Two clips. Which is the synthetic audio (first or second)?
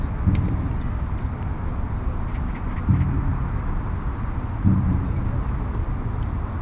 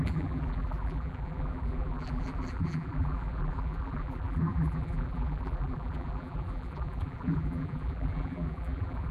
second